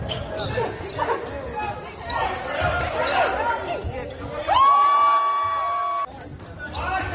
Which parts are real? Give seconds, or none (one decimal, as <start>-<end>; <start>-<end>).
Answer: 0.0-7.1